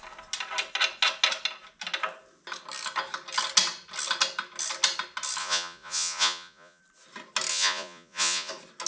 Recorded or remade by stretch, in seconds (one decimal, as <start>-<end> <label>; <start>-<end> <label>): 0.0-5.4 recorded; 5.4-6.8 remade; 6.8-7.5 recorded; 7.5-8.5 remade; 8.5-8.9 recorded